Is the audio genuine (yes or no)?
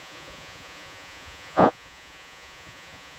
no